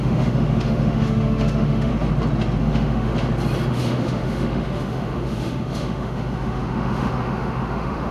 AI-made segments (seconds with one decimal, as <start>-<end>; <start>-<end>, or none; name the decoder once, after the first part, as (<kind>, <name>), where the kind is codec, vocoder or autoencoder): 0.0-1.9 (autoencoder, DAC-VAE); 2.6-3.1; 3.7-8.1